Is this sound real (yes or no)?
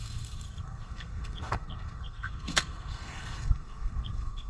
no